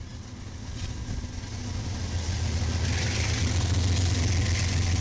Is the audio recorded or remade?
recorded